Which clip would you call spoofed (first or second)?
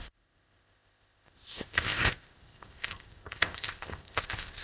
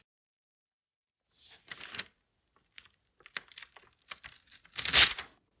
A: first